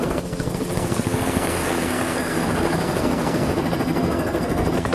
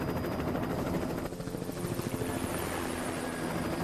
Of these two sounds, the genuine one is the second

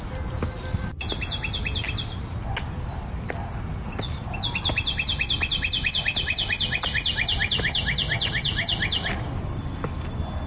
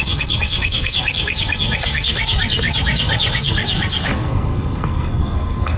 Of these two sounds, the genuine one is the first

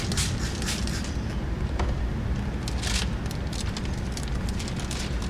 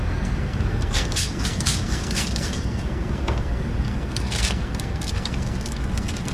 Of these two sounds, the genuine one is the first